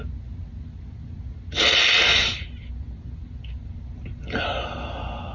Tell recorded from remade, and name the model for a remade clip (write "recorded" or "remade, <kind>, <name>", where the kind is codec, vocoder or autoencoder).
recorded